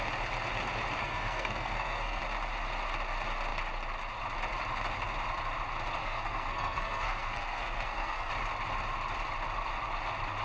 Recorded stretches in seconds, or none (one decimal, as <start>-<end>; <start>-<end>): 0.0-1.0; 2.2-6.0; 8.3-10.4